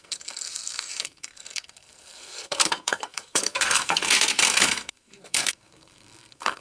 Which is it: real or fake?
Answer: fake